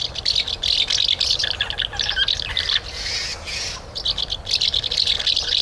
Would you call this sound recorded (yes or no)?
yes